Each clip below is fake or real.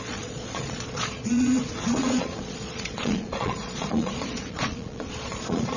fake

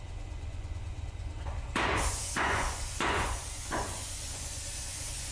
fake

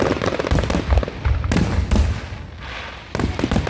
real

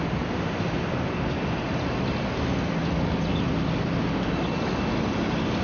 real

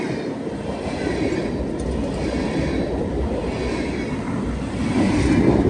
real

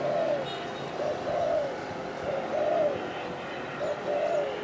real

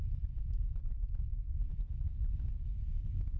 real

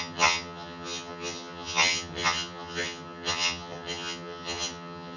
fake